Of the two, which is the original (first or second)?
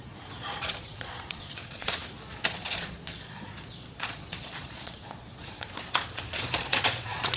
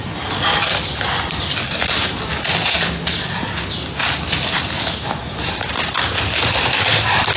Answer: second